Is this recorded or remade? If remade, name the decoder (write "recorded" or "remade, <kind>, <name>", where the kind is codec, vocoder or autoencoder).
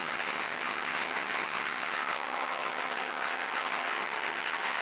remade, vocoder, HiFi-GAN